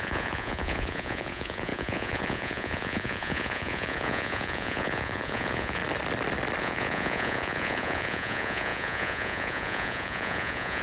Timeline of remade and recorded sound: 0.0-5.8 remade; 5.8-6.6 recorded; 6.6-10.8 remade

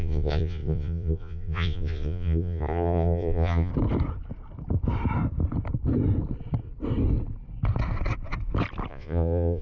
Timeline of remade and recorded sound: 0.0-3.7 remade; 3.7-8.9 recorded; 8.9-9.6 remade

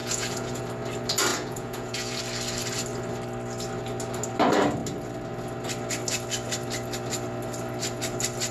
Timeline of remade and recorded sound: 0.0-0.6 remade; 0.6-1.3 recorded; 1.3-2.2 remade; 2.2-8.5 recorded

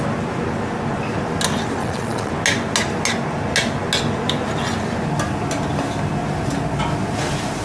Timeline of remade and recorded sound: 0.0-1.8 recorded; 1.8-2.3 remade; 2.3-7.6 recorded

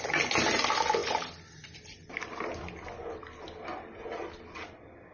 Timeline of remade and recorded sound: 0.0-5.1 recorded

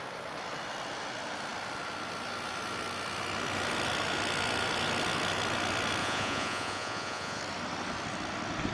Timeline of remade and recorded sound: 0.0-6.0 recorded; 6.0-7.4 remade; 7.4-8.7 recorded

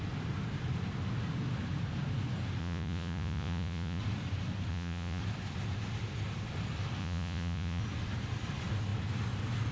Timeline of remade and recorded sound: 0.0-2.6 recorded; 2.6-4.0 remade; 4.0-4.7 recorded; 4.7-5.2 remade; 5.2-7.0 recorded; 7.0-7.8 remade; 7.8-9.7 recorded

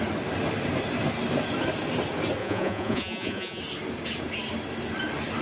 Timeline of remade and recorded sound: 0.0-2.4 recorded; 2.4-3.6 remade; 3.6-5.4 recorded